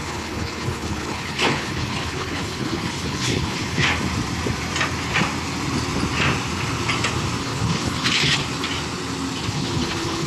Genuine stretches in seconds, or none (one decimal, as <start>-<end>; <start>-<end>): 3.9-7.4; 8.4-9.5